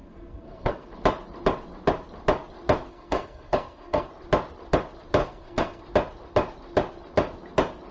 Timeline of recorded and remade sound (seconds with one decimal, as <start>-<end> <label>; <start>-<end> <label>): 0.0-0.9 remade; 0.9-2.9 recorded; 2.9-4.1 remade; 4.1-5.2 recorded; 5.2-5.8 remade; 5.8-7.9 recorded